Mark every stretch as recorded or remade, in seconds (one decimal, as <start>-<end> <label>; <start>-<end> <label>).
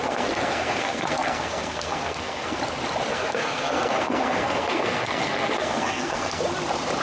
0.0-2.6 remade; 2.6-3.1 recorded; 3.1-6.4 remade; 6.4-7.0 recorded